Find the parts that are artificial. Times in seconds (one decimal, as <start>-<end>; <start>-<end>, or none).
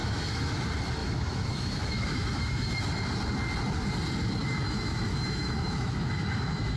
0.0-0.5; 1.0-2.8; 4.4-6.8